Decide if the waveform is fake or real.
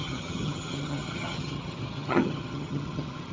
fake